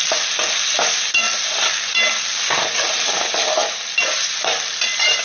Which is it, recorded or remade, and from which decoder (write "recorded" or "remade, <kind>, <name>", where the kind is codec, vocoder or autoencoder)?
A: recorded